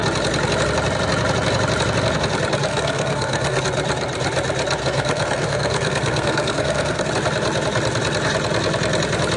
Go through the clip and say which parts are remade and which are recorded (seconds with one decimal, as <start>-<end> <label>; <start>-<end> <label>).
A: 0.0-2.7 recorded; 2.7-3.6 remade; 3.6-4.8 recorded; 4.8-7.1 remade; 7.1-9.4 recorded